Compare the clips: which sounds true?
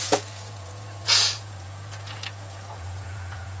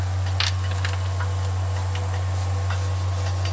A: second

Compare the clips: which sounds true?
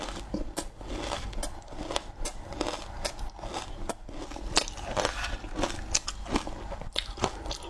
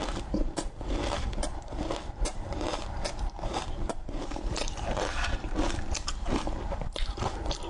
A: first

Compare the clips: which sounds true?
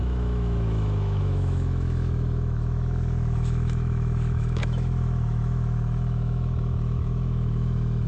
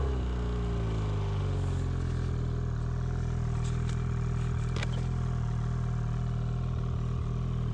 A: second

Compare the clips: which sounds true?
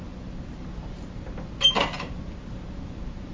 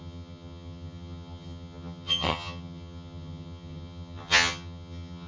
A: first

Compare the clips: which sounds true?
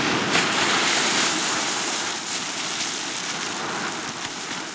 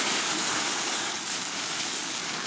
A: first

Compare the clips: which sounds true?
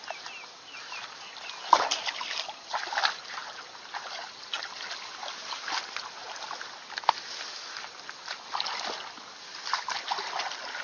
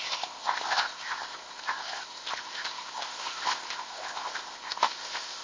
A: first